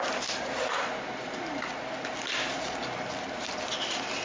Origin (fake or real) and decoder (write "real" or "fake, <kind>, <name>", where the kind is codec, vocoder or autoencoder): real